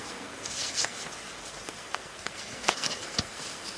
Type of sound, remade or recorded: remade